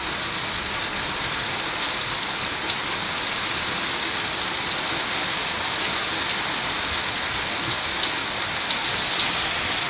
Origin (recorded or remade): recorded